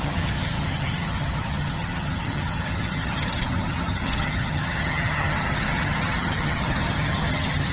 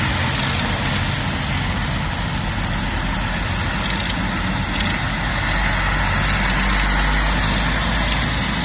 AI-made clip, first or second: first